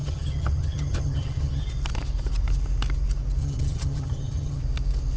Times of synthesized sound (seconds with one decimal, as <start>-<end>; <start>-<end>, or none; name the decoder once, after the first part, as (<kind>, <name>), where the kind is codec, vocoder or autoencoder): 0.0-1.6 (vocoder, HiFi-GAN); 3.4-4.6